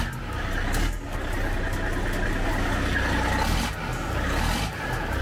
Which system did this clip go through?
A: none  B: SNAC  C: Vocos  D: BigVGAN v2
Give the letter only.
A